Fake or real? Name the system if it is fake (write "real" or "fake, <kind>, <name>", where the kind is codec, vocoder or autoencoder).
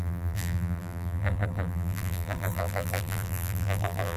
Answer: fake, vocoder, BigVGAN v2